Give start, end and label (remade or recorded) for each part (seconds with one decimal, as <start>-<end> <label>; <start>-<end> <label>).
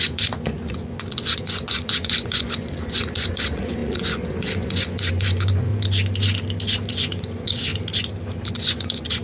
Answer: 0.0-5.7 remade; 5.7-6.9 recorded; 6.9-7.7 remade; 7.7-8.5 recorded; 8.5-9.2 remade